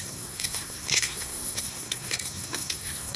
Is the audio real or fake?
fake